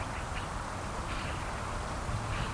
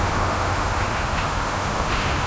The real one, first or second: first